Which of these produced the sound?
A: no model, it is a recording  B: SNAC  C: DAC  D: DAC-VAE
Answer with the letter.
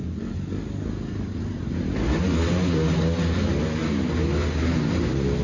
A